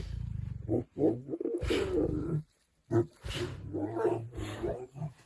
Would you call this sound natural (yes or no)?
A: yes